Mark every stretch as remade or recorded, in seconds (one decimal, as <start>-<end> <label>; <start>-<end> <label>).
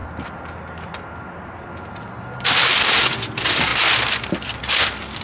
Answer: 0.0-3.1 recorded; 3.1-3.7 remade; 3.7-4.3 recorded; 4.3-5.2 remade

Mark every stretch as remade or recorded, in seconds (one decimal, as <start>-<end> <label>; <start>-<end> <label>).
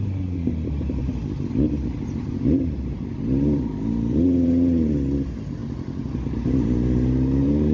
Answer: 0.0-1.0 remade; 1.0-2.3 recorded; 2.3-5.6 remade; 5.6-6.3 recorded; 6.3-7.7 remade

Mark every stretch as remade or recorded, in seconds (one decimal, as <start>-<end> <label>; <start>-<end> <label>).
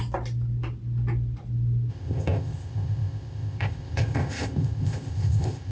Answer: 0.0-1.9 recorded; 1.9-5.7 remade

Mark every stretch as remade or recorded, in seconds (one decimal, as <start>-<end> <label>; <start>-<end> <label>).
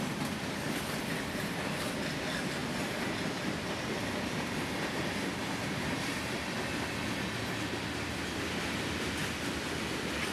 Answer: 0.0-10.3 recorded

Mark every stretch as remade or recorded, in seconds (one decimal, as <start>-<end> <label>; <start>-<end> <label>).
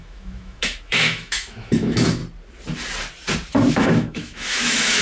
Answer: 0.0-2.2 remade; 2.2-3.7 recorded; 3.7-5.0 remade